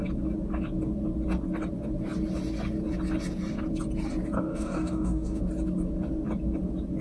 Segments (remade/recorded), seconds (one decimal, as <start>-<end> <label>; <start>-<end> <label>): 0.0-4.5 recorded; 4.5-5.4 remade; 5.4-7.0 recorded